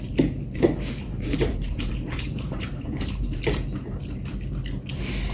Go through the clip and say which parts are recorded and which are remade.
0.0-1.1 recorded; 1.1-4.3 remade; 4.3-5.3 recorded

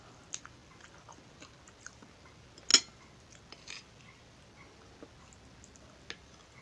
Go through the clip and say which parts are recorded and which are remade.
0.0-6.6 recorded

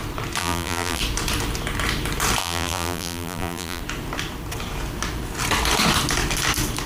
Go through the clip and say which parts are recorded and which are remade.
0.0-0.4 recorded; 0.4-1.0 remade; 1.0-2.4 recorded; 2.4-3.8 remade; 3.8-6.9 recorded

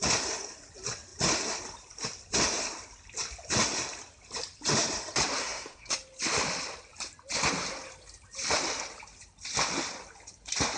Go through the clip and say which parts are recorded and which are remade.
0.0-5.4 recorded; 5.4-5.9 remade; 5.9-10.8 recorded

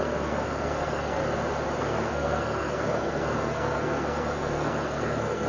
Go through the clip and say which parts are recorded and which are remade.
0.0-1.2 remade; 1.2-1.8 recorded; 1.8-5.5 remade

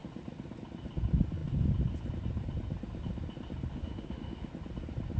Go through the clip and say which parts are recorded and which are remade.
0.0-3.7 recorded; 3.7-4.5 remade; 4.5-5.2 recorded

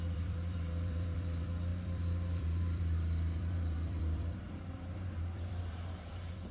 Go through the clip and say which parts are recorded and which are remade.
0.0-6.5 remade

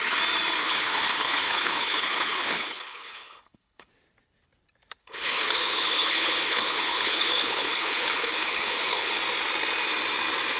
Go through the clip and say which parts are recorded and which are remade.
0.0-0.6 recorded; 0.6-3.9 remade; 3.9-5.0 recorded; 5.0-9.2 remade; 9.2-10.6 recorded